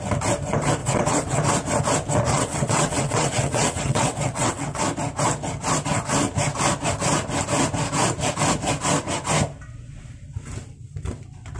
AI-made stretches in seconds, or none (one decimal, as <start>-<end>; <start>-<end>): 0.8-1.4; 2.3-4.8